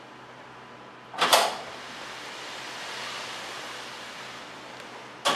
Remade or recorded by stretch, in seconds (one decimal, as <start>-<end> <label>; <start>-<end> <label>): 0.0-1.3 recorded; 1.3-4.4 remade; 4.4-5.4 recorded